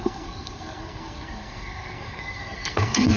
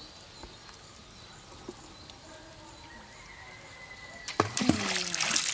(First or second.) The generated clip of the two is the first